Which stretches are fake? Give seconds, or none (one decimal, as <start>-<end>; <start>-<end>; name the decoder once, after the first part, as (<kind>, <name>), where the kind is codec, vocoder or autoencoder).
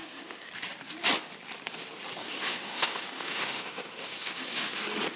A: 0.0-0.5 (autoencoder, DAC-VAE); 2.2-4.8